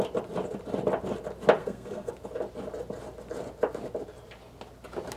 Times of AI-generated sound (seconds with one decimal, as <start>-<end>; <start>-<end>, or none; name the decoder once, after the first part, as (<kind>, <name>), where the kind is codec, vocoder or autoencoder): 1.6-2.1 (codec, SNAC)